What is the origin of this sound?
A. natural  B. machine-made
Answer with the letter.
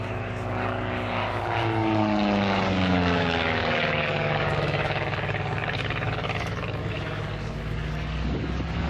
B